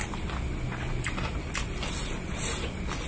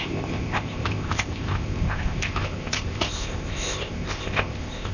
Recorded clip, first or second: first